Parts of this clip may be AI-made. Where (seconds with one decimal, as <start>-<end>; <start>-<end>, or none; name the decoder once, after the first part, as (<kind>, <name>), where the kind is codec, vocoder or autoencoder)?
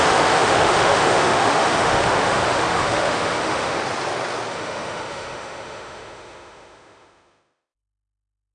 0.0-3.8 (autoencoder, DAC-VAE); 4.5-8.5